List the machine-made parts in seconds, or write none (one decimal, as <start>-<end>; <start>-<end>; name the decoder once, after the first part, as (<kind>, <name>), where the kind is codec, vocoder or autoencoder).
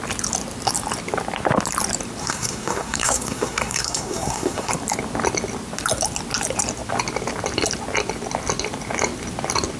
2.2-4.7 (codec, SNAC)